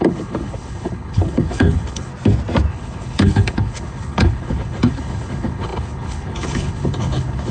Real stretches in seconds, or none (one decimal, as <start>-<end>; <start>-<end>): 2.1-2.7